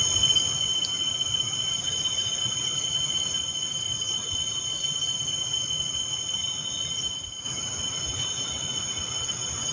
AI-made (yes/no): no